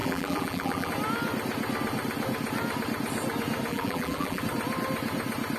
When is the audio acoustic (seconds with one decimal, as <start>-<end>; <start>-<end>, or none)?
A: 0.9-3.7; 4.4-5.6